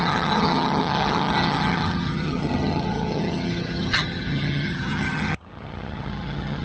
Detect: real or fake fake